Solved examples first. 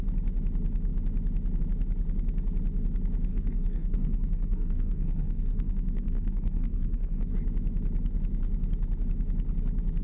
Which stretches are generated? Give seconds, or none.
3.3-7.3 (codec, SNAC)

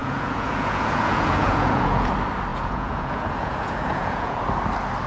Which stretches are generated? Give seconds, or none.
0.0-2.1 (vocoder, Vocos); 2.5-4.4

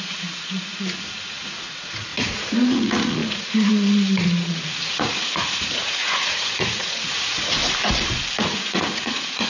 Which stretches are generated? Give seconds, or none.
0.0-7.6 (vocoder, Vocos); 8.4-9.5

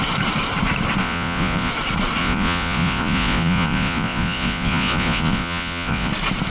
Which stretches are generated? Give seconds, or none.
1.0-1.7 (vocoder, Vocos); 2.2-6.1

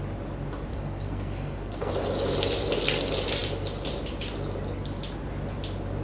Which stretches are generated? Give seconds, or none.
0.7-1.9 (codec, SNAC)

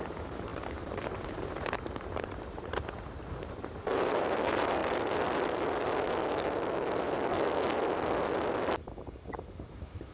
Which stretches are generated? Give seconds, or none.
0.0-4.8 (vocoder, BigVGAN v2); 9.7-10.1

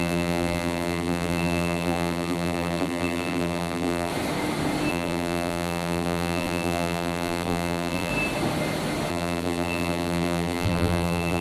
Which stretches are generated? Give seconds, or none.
0.0-4.1 (vocoder, BigVGAN v2); 4.9-8.1; 9.1-11.4